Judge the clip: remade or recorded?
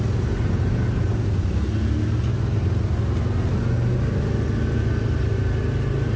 recorded